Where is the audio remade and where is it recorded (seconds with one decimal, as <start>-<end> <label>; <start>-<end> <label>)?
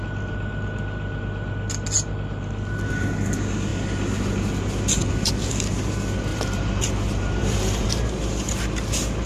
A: 0.0-6.3 recorded; 6.3-6.9 remade; 6.9-7.4 recorded; 7.4-8.0 remade; 8.0-9.3 recorded